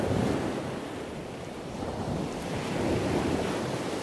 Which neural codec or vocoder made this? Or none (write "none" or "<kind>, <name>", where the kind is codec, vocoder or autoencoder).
none